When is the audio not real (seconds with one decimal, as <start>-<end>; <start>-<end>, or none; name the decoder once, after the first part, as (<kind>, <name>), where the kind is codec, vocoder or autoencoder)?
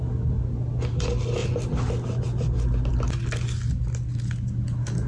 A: none